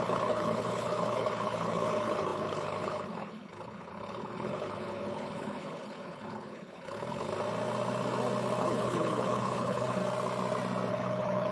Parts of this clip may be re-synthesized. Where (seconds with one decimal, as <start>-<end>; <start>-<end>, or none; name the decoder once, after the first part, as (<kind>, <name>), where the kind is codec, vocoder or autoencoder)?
0.0-7.3 (codec, HILCodec); 8.6-10.0; 10.9-11.5